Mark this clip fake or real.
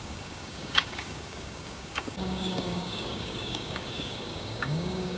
fake